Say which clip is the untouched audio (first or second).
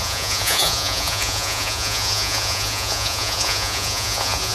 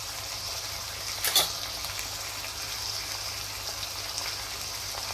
second